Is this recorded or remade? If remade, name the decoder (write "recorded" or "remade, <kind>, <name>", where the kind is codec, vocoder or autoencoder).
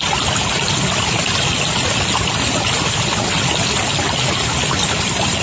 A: recorded